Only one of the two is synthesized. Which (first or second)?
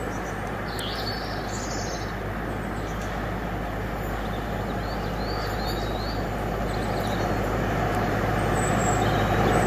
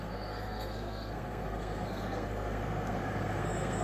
second